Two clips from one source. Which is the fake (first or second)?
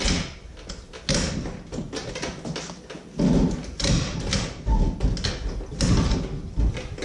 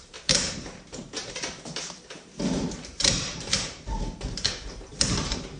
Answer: second